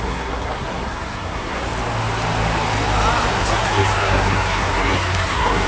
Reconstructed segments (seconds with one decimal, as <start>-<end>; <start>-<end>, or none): 0.0-1.6; 3.3-5.7